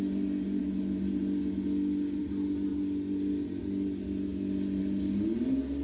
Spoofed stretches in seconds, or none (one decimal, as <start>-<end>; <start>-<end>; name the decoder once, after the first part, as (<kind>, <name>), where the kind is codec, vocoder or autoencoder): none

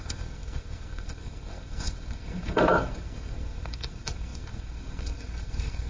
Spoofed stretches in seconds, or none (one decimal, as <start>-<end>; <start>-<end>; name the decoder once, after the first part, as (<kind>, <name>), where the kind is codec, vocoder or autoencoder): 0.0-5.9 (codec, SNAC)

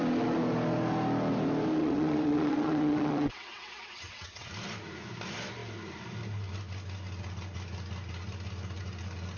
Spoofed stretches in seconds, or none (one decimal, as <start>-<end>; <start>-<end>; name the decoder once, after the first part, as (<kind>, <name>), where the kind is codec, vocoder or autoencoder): 1.8-4.5 (vocoder, WaveNeXt)